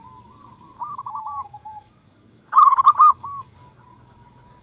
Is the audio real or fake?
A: fake